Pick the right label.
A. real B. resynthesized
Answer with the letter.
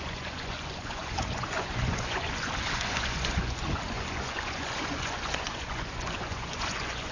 B